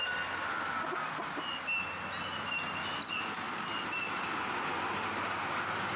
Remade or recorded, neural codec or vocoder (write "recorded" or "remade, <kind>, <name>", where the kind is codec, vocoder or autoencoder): recorded